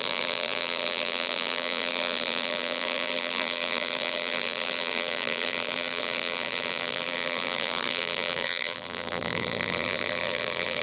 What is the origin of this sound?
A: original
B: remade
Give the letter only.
B